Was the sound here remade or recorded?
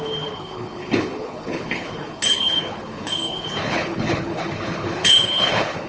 remade